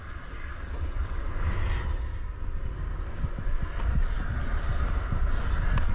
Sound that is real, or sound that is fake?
real